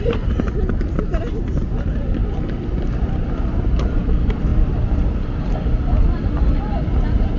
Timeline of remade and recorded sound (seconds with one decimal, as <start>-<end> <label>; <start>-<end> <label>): 0.0-7.4 recorded